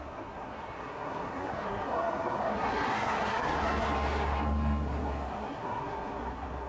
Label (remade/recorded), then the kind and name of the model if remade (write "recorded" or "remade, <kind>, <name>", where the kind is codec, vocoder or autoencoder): remade, codec, SNAC